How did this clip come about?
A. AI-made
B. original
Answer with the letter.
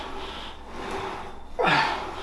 B